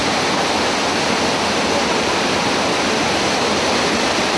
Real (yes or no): yes